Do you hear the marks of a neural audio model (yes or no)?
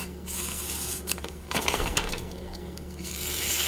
yes